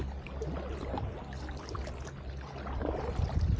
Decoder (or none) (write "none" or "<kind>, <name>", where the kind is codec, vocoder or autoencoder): none